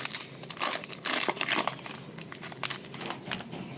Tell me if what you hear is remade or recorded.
recorded